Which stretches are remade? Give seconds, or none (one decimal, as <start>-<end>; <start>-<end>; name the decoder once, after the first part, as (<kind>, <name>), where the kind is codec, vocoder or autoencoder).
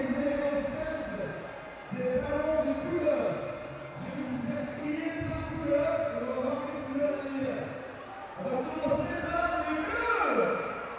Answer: 0.0-1.3 (vocoder, BigVGAN v2); 6.5-11.0